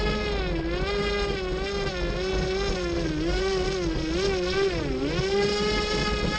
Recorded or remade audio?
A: recorded